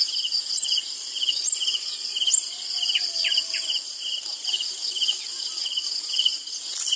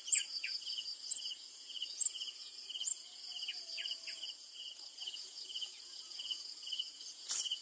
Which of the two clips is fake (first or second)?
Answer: second